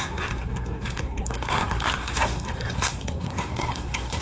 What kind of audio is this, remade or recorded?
remade